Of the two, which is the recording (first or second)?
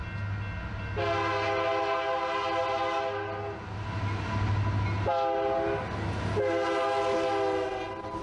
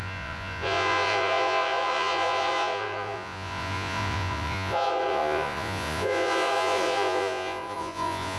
first